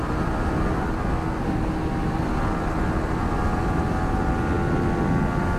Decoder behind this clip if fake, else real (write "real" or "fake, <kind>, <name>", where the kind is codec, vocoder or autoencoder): real